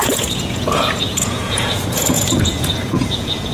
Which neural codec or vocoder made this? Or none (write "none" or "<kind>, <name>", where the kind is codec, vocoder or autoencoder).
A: vocoder, Vocos